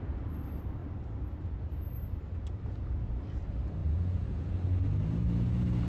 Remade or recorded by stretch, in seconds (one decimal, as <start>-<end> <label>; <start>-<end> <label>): 0.0-3.8 recorded; 3.8-4.5 remade; 4.5-5.9 recorded